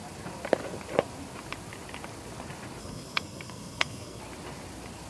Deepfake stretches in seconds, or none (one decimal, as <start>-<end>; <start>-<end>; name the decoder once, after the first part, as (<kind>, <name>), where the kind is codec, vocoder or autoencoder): 2.8-4.2 (codec, SNAC)